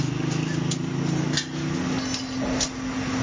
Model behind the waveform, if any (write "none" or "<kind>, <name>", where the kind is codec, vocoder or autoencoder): none